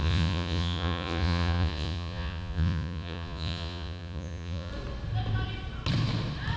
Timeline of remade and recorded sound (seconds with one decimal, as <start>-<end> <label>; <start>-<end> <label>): 0.0-4.7 remade; 4.7-6.6 recorded

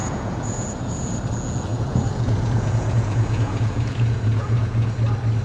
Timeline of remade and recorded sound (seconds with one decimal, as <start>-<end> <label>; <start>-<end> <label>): 0.0-1.2 remade; 1.2-1.7 recorded; 1.7-4.9 remade; 4.9-5.4 recorded

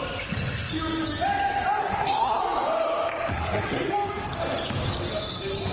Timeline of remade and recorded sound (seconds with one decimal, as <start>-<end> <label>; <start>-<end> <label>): 0.0-1.8 recorded; 1.8-2.4 remade; 2.4-3.3 recorded; 3.3-3.9 remade; 3.9-5.7 recorded

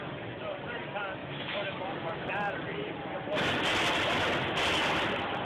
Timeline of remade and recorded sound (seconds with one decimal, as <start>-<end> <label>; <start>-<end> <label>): 0.0-1.2 recorded; 1.2-1.8 remade; 1.8-5.5 recorded

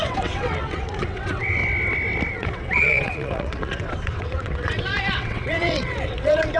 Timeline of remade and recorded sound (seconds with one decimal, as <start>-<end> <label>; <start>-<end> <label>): 0.0-1.6 remade; 1.6-2.3 recorded; 2.3-6.6 remade

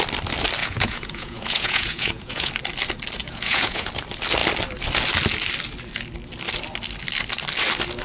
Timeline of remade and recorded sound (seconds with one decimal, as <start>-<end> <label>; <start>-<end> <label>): 0.0-0.6 recorded; 0.6-2.5 remade; 2.5-3.2 recorded; 3.2-3.9 remade; 3.9-8.0 recorded

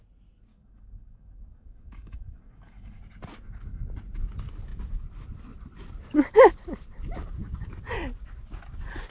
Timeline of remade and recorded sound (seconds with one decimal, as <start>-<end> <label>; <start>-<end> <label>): 0.0-0.5 recorded; 0.5-3.0 remade; 3.0-9.1 recorded